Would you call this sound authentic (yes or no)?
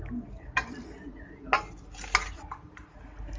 yes